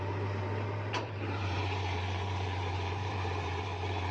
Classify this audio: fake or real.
fake